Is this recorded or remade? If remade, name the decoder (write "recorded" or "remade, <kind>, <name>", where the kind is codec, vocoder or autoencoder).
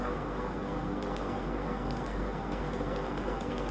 remade, codec, SNAC